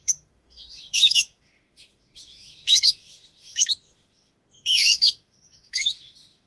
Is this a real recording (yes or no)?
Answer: no